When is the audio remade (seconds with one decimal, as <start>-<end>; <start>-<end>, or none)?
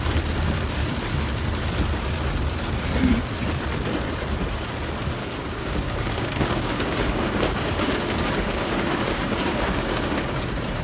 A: 5.2-10.4